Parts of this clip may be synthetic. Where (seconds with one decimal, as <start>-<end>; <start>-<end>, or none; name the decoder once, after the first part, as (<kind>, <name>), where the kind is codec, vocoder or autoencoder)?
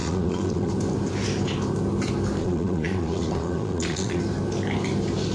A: 0.0-0.7 (vocoder, Vocos); 2.4-4.2